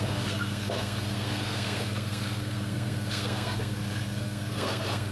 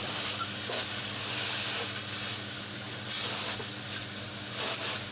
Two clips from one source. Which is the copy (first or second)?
first